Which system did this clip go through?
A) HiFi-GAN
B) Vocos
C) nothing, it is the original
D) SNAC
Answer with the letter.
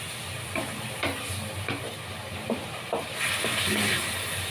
C